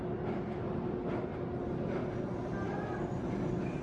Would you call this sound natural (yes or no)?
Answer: yes